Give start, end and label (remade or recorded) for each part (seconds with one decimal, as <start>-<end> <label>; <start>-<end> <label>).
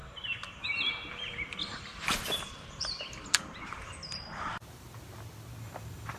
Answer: 0.0-1.9 remade; 1.9-5.6 recorded; 5.6-6.2 remade